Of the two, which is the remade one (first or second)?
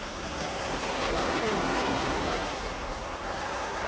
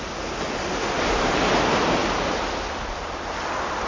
first